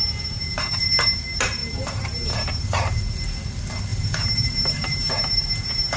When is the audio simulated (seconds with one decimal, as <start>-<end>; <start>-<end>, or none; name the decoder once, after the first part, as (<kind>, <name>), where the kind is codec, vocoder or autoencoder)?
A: 1.6-3.0 (vocoder, BigVGAN v2); 3.9-5.1